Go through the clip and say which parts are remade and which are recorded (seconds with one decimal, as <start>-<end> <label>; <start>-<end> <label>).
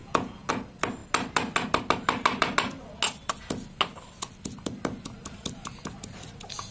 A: 0.0-0.5 remade; 0.5-6.7 recorded